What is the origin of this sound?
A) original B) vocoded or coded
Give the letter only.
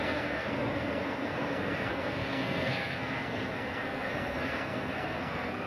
B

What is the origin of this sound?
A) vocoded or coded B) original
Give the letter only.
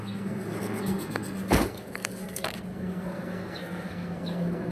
A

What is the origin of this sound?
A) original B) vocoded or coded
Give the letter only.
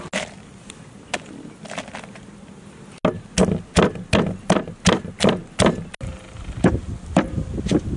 A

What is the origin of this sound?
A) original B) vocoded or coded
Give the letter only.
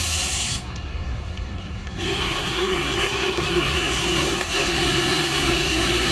B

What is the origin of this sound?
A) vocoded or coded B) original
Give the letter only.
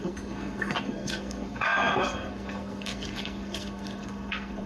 A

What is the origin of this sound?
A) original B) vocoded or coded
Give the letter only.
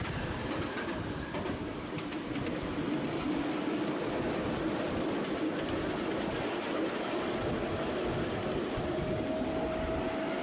A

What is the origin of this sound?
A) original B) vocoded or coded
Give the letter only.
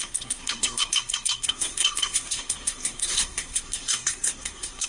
B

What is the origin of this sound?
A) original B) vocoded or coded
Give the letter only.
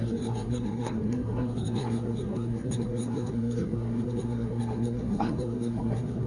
B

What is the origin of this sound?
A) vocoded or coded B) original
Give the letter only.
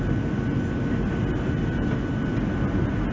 B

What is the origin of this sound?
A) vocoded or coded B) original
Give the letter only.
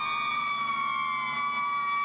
B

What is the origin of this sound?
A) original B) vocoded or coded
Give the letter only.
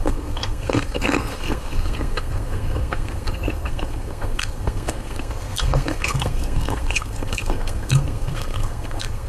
B